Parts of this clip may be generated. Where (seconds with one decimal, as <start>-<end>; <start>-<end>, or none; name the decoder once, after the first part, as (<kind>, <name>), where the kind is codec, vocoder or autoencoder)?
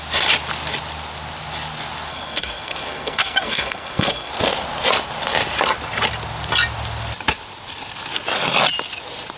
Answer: 2.1-4.3 (codec, SNAC)